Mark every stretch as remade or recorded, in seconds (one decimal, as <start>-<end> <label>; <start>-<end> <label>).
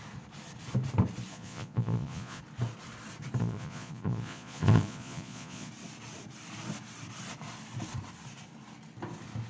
0.0-1.3 recorded; 1.3-2.4 remade; 2.4-3.4 recorded; 3.4-5.7 remade; 5.7-9.5 recorded